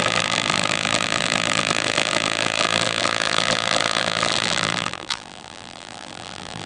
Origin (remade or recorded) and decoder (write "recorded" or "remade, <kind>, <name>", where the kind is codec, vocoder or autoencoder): remade, vocoder, BigVGAN v2